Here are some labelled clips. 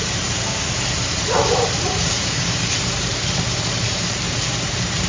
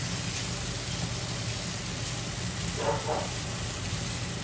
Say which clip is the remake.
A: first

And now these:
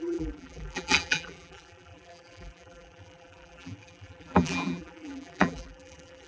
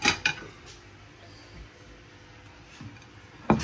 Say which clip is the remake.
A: first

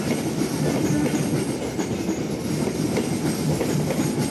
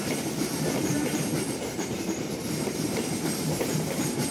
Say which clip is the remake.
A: second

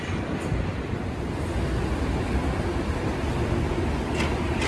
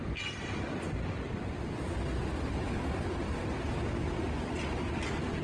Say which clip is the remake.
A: second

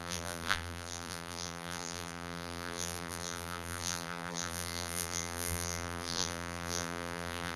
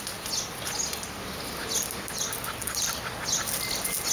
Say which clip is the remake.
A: first